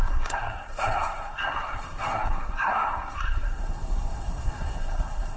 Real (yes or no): no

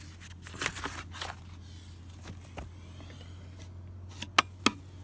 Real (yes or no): yes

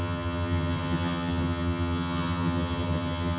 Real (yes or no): no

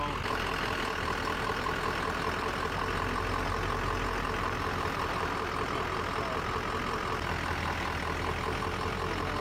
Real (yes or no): yes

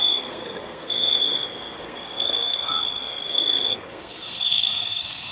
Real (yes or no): no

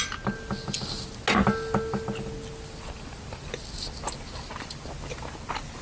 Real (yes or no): yes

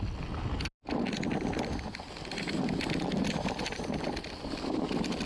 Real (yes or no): yes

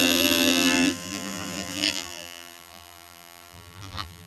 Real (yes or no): no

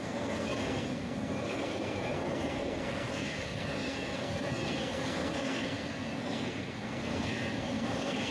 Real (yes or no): no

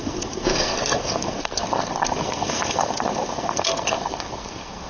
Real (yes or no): no